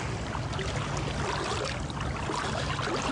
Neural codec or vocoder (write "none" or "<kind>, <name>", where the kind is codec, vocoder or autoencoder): none